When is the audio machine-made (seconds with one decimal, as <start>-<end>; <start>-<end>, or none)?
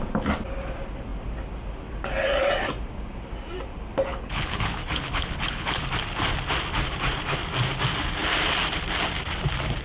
4.1-5.8